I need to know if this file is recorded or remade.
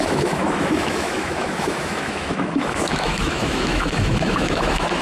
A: remade